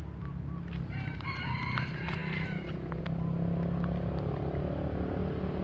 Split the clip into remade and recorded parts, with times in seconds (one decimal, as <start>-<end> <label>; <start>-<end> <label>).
0.0-5.6 recorded